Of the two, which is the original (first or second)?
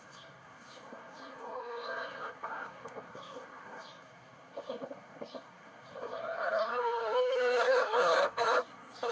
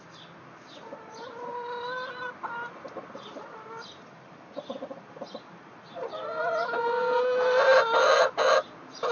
second